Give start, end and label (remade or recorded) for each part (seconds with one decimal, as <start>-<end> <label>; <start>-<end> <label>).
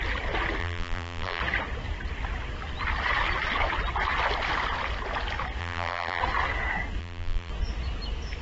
0.0-0.6 recorded; 0.6-1.4 remade; 1.4-5.6 recorded; 5.6-6.2 remade; 6.2-7.0 recorded; 7.0-7.5 remade; 7.5-8.4 recorded